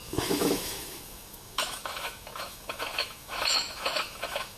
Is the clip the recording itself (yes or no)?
no